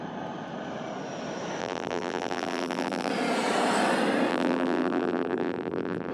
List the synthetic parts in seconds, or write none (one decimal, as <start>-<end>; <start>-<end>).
1.6-3.1; 4.3-6.1